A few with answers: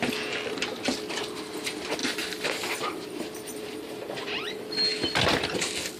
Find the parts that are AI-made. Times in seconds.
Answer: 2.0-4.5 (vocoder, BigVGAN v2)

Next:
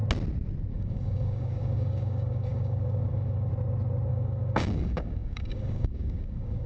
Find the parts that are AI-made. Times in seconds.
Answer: 0.7-3.5 (codec, DAC); 4.1-6.7

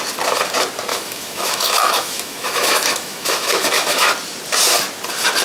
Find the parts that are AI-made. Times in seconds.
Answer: 0.9-4.1 (autoencoder, DAC-VAE)

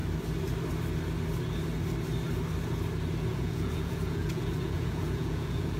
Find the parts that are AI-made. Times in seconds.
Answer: 3.3-5.8 (vocoder, Vocos)